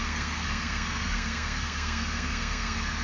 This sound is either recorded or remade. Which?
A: remade